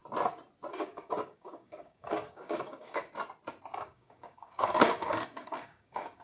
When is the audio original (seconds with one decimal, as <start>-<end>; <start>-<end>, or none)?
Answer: 0.0-0.7; 3.0-3.7